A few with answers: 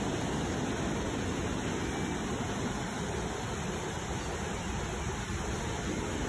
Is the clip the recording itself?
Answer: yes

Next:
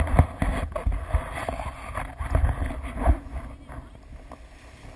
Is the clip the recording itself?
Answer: yes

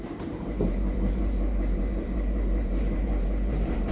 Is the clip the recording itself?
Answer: no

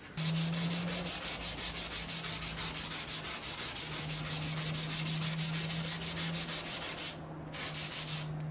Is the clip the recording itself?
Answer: yes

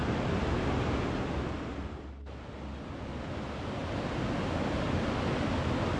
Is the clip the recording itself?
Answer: yes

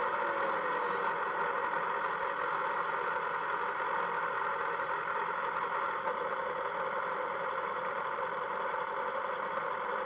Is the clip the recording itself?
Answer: yes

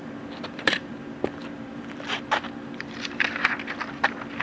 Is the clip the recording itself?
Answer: no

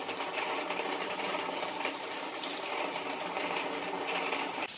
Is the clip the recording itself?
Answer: no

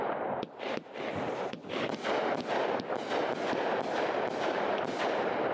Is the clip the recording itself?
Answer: yes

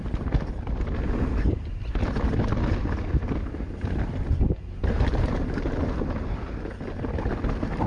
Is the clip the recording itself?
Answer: yes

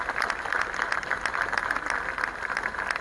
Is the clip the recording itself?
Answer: no